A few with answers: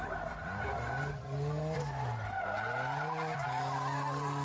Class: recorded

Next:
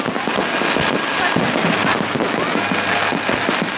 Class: recorded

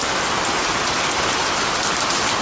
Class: recorded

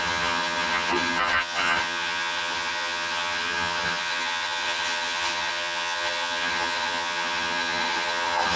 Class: remade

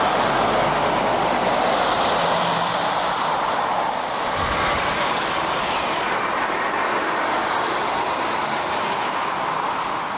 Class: recorded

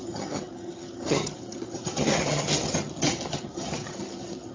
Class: remade